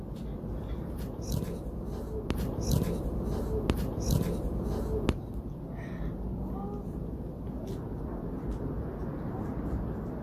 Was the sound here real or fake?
real